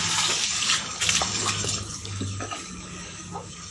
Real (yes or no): no